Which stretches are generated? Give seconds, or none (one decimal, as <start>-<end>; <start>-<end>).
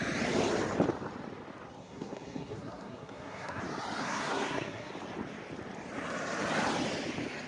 1.8-3.6; 4.0-4.9